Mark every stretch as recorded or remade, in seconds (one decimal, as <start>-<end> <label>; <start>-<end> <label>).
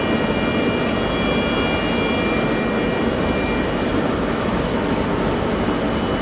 0.0-6.2 recorded